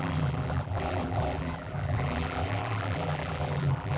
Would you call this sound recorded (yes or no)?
no